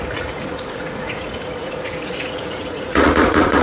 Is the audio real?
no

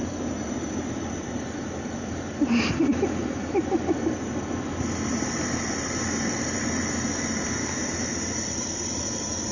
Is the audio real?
no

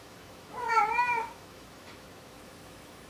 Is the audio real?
no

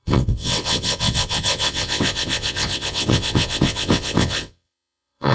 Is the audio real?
no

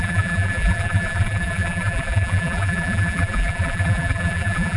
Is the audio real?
no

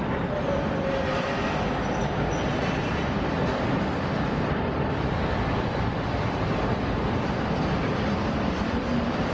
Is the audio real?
no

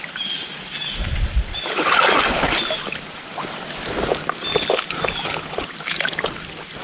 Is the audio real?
yes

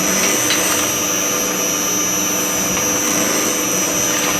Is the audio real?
yes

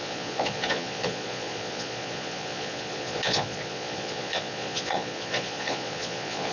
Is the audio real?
no